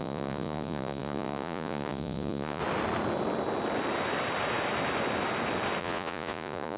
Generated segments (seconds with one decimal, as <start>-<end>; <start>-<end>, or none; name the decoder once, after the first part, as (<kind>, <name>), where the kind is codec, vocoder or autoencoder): 0.0-2.6 (vocoder, Vocos); 5.8-6.8